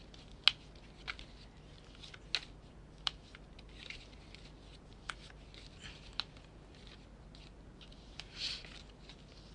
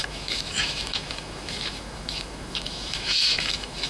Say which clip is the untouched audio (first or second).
first